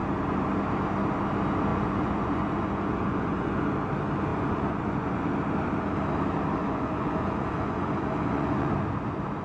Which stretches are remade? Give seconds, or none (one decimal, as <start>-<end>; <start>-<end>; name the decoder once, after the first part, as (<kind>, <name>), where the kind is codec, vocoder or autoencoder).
1.7-3.6 (vocoder, Vocos); 4.3-5.3; 6.6-8.7